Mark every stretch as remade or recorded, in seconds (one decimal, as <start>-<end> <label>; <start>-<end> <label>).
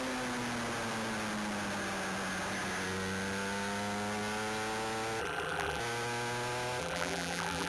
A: 0.0-5.2 recorded; 5.2-5.8 remade; 5.8-6.8 recorded; 6.8-7.7 remade